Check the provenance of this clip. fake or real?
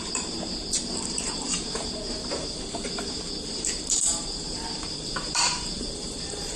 fake